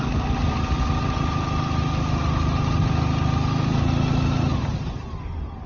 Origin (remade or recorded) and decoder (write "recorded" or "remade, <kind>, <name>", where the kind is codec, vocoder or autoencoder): recorded